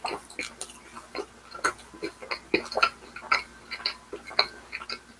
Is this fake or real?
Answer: real